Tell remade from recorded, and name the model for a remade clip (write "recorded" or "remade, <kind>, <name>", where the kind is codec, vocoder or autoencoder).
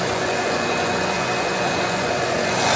remade, vocoder, Vocos